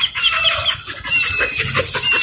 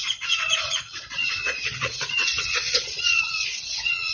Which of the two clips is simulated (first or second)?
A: second